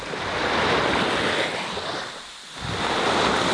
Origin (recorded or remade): recorded